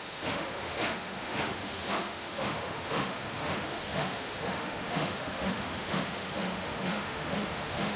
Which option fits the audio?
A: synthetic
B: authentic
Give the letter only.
A